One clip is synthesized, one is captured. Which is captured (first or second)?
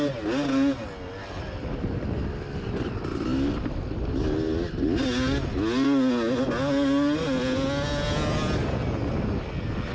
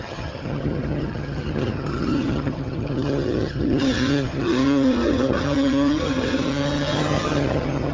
first